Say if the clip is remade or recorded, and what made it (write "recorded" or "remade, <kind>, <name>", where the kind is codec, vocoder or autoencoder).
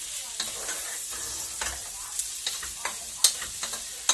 recorded